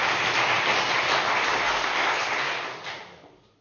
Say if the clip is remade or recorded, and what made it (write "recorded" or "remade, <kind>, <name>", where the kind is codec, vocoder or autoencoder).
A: recorded